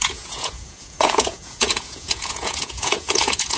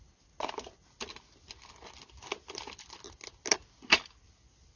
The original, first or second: second